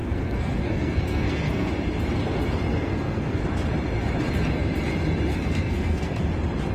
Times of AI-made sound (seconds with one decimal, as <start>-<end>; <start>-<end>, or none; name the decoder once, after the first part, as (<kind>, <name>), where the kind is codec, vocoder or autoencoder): 0.0-1.7 (codec, SNAC); 2.7-3.4; 5.3-6.2